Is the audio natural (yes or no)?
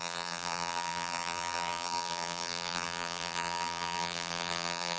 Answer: no